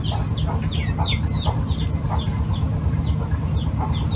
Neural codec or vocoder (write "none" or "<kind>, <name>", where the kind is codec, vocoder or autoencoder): none